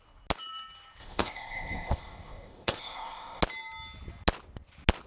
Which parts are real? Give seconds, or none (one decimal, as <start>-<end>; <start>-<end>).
0.0-1.0; 3.4-5.1